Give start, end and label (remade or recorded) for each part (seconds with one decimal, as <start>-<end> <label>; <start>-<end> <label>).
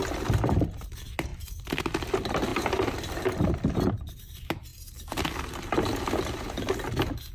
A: 0.0-1.3 recorded; 1.3-1.8 remade; 1.8-2.5 recorded; 2.5-4.2 remade; 4.2-7.3 recorded